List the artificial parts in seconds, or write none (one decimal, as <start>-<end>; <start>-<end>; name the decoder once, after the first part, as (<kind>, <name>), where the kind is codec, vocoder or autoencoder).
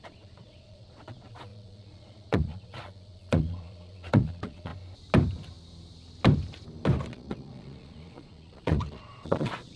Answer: 0.0-4.7 (vocoder, Vocos); 7.1-9.8